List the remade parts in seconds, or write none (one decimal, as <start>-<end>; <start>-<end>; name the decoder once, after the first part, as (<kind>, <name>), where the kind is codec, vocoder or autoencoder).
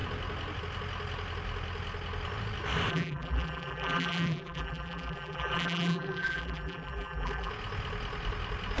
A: 2.9-7.5 (vocoder, BigVGAN v2)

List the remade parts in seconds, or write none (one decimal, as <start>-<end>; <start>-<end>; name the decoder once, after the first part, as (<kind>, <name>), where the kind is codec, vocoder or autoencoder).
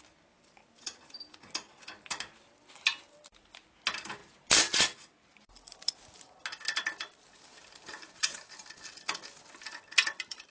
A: 7.5-9.0 (vocoder, BigVGAN v2)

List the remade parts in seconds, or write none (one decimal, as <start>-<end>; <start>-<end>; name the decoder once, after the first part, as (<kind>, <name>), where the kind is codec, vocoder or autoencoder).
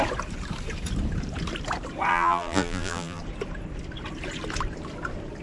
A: 2.1-3.2 (vocoder, BigVGAN v2)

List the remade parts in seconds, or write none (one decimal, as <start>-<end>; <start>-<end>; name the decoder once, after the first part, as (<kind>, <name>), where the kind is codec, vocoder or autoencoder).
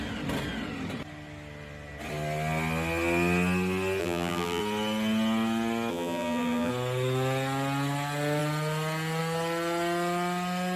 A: 4.0-4.6 (vocoder, BigVGAN v2); 5.9-6.7